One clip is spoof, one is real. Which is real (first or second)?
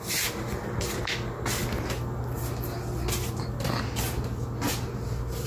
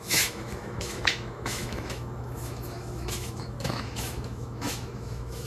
first